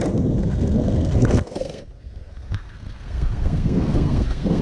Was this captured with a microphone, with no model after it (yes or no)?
no